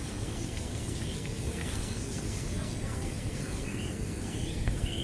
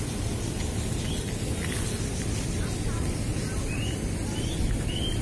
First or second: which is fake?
first